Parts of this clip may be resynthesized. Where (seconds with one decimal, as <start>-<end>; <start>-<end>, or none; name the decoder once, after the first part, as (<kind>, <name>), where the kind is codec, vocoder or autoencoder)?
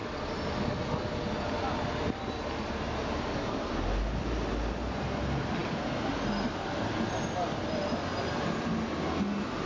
none